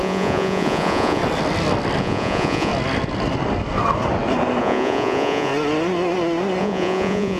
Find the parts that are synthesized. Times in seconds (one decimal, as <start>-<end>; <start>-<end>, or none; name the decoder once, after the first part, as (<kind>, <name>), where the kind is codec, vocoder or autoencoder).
0.0-1.2 (vocoder, Vocos); 2.0-2.7; 4.6-5.5; 6.6-7.4